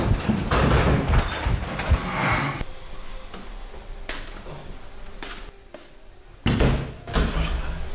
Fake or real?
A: real